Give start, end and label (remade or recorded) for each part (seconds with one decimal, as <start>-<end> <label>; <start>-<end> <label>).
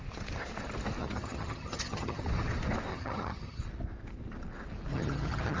0.0-1.0 recorded; 1.0-2.2 remade; 2.2-2.9 recorded; 2.9-3.6 remade; 3.6-4.9 recorded; 4.9-5.6 remade